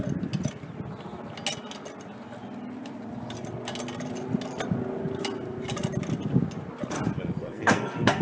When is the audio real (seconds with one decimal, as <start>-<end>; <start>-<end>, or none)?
0.0-7.4